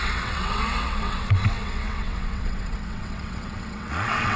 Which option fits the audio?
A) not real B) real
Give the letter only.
A